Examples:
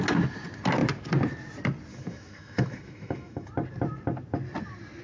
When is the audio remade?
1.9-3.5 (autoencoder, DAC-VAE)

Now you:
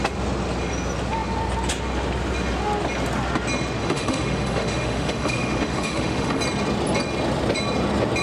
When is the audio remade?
3.8-6.4 (autoencoder, DAC-VAE)